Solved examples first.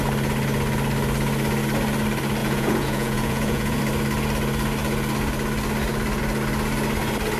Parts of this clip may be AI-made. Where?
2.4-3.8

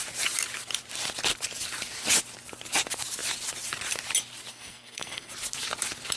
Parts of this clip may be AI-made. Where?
4.5-5.3

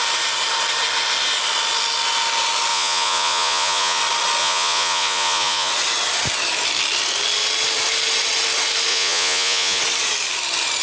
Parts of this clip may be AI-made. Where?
2.7-4.0; 4.4-5.7; 8.9-9.8

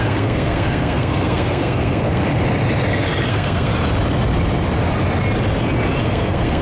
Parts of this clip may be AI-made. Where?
0.0-2.2; 3.3-3.7; 6.0-6.6

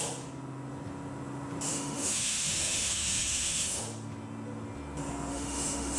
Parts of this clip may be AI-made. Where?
1.7-3.8; 5.3-6.0

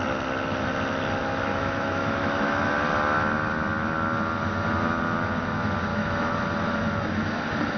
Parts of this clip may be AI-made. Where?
1.5-2.6; 5.9-6.4